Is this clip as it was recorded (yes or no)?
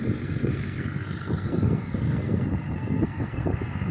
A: no